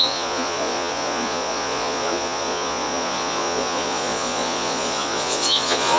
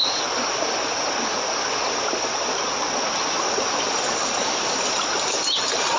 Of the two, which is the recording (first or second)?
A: second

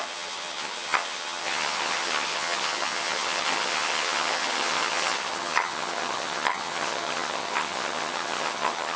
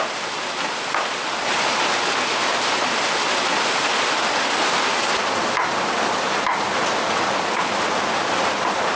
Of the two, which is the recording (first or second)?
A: second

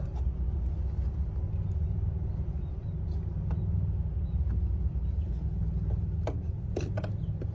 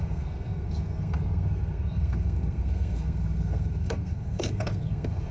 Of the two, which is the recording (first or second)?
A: first